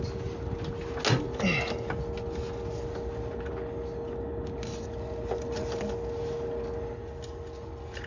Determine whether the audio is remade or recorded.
recorded